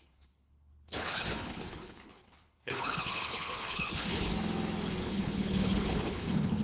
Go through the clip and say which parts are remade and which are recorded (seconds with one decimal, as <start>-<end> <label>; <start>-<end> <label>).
0.0-4.3 remade; 4.3-5.0 recorded; 5.0-6.6 remade